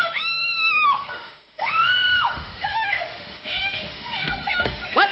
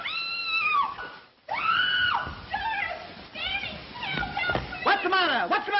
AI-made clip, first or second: first